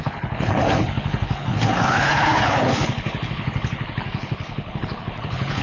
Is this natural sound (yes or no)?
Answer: no